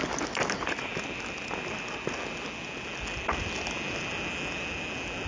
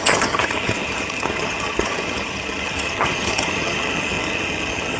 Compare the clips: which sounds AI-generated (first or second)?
second